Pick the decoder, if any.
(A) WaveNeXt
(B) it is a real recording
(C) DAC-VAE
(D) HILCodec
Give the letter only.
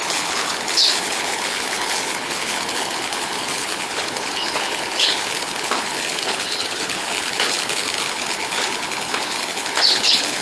D